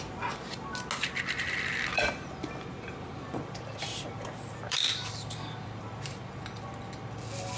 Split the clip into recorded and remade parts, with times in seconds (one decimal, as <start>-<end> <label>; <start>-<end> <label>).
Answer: 0.0-1.9 recorded; 1.9-6.3 remade; 6.3-7.6 recorded